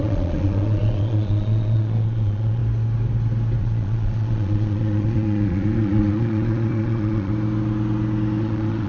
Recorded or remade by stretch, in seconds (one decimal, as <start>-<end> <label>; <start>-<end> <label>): 0.0-2.6 remade; 2.6-3.6 recorded; 3.6-7.3 remade; 7.3-8.4 recorded; 8.4-8.9 remade